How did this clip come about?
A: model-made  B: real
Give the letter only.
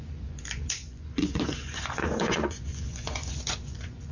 A